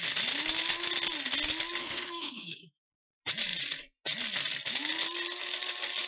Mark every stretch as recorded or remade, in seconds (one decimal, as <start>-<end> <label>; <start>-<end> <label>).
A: 0.0-1.8 recorded; 1.8-2.9 remade; 2.9-6.1 recorded